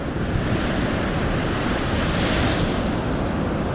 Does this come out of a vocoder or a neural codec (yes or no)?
no